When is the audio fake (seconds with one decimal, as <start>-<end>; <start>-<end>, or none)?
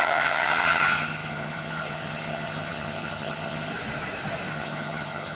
0.0-3.7; 4.5-5.3